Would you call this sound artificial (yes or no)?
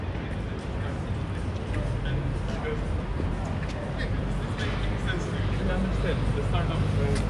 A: no